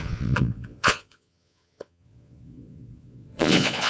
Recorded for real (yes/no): no